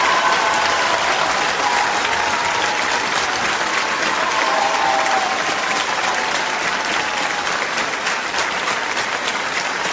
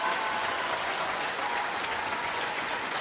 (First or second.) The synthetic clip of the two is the second